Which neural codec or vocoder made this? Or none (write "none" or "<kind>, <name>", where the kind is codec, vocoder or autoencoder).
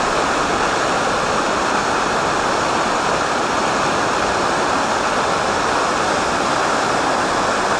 none